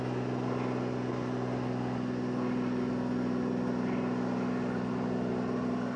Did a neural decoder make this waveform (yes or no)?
no